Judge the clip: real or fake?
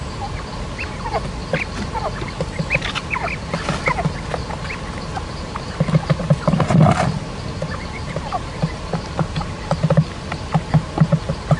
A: real